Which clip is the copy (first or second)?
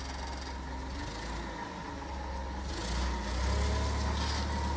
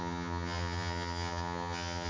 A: second